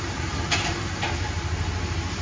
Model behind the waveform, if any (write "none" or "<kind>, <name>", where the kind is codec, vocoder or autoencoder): none